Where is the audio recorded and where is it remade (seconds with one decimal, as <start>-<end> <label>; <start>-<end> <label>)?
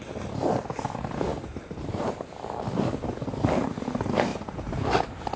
0.0-5.4 recorded